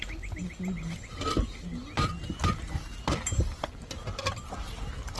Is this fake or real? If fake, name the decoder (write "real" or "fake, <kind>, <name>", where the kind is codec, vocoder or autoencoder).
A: real